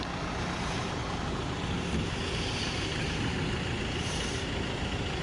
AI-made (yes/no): no